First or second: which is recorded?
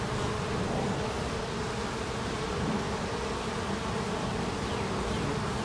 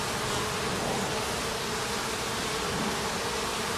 second